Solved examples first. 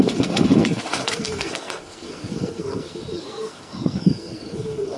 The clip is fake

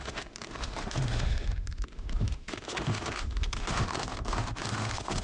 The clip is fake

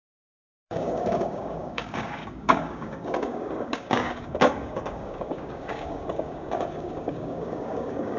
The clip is fake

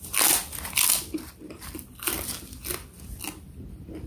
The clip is real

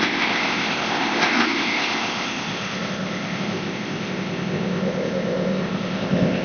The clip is fake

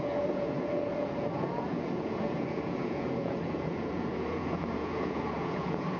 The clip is fake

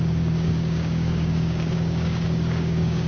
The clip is fake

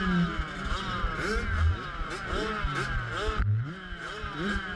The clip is real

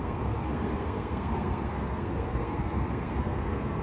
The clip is fake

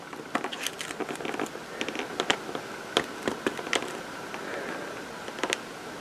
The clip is real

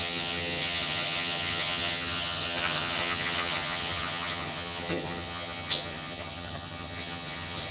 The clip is fake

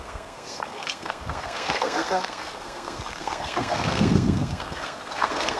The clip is fake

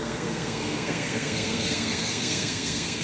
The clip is fake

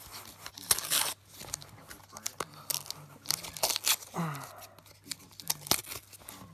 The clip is real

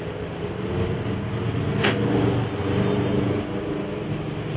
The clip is real